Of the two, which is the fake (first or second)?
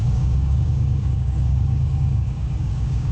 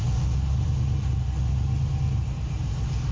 first